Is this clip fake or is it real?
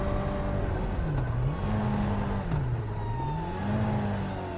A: real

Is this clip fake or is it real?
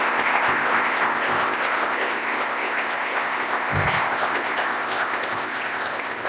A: fake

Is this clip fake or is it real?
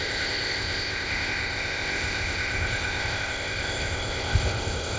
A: fake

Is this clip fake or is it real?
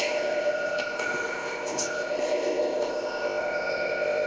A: fake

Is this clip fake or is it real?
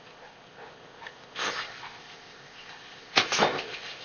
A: fake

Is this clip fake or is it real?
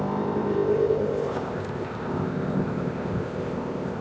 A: fake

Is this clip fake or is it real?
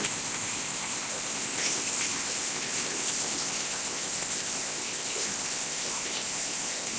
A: fake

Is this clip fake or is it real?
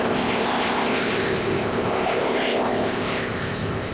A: fake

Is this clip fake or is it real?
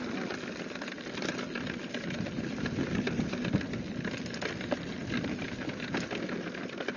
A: real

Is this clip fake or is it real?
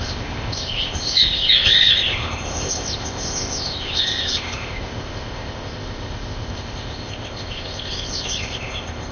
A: fake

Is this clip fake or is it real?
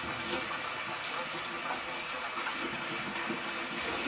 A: real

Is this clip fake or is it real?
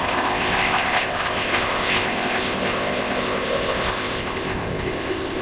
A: fake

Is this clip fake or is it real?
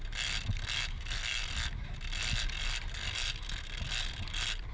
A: real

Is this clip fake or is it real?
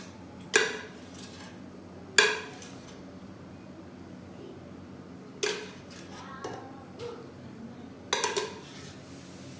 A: real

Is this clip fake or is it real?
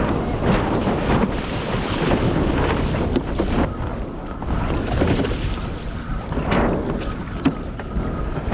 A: real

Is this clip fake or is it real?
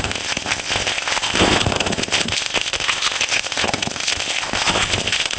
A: fake